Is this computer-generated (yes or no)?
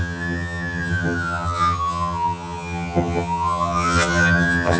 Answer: yes